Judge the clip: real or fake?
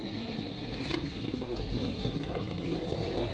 fake